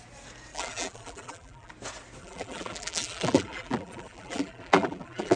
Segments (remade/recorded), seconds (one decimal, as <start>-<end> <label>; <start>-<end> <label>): 0.0-0.5 recorded; 0.5-1.7 remade; 1.7-2.2 recorded; 2.2-5.4 remade